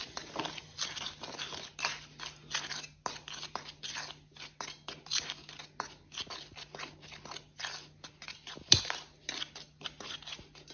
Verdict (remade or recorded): recorded